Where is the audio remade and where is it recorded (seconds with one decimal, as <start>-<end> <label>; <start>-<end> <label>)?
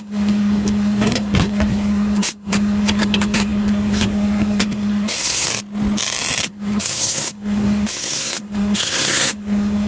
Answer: 0.0-5.5 remade; 5.5-6.4 recorded; 6.4-9.9 remade